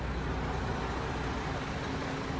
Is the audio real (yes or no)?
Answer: yes